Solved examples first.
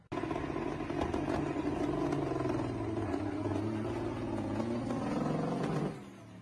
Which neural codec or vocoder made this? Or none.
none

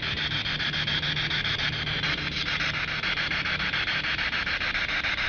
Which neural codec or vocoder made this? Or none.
none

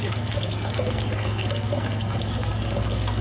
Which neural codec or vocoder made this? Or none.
codec, SNAC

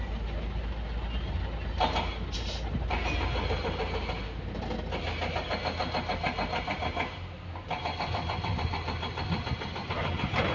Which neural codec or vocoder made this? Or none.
none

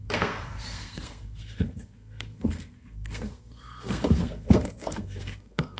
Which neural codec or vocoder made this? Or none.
codec, SNAC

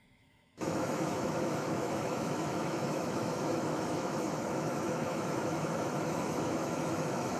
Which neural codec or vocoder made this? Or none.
autoencoder, DAC-VAE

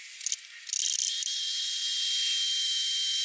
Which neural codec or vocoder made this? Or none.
none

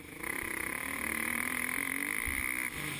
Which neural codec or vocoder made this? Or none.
none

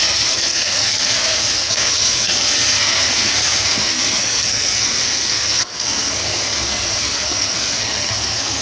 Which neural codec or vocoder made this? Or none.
codec, SNAC